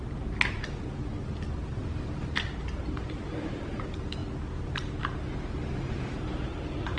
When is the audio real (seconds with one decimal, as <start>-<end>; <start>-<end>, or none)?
0.0-7.0